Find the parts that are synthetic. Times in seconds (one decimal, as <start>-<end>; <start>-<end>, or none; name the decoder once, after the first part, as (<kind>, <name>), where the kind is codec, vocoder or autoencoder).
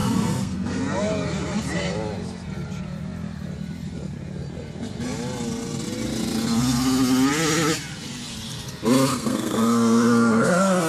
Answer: 0.0-0.8 (codec, SNAC); 9.1-10.9